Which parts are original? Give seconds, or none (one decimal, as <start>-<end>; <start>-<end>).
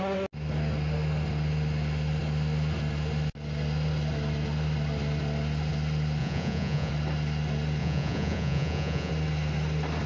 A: 0.0-6.2; 6.9-7.8; 9.1-10.1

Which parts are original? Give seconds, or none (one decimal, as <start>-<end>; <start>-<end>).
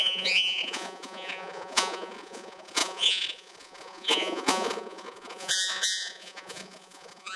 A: none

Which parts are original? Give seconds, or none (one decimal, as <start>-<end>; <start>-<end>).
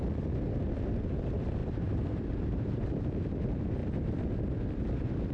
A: 0.0-1.6; 3.0-3.8; 4.3-5.3